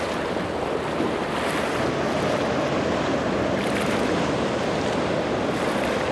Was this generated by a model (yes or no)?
no